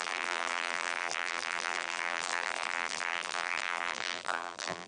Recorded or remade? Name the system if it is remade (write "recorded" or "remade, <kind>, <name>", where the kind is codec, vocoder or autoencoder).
remade, vocoder, BigVGAN v2